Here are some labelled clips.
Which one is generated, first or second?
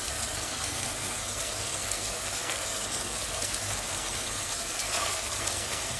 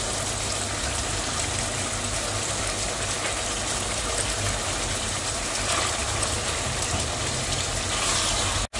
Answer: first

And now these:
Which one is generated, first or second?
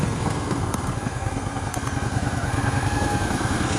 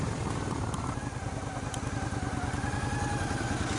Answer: first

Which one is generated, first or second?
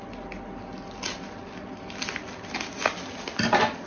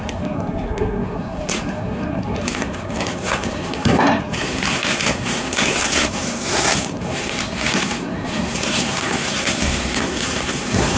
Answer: second